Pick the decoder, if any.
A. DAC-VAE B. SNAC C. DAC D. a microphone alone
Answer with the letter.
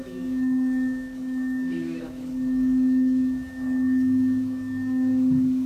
C